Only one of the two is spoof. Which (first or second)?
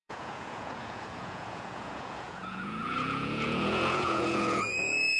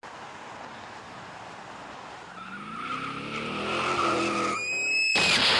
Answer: first